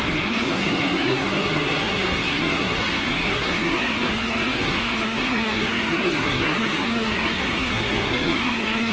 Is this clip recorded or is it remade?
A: remade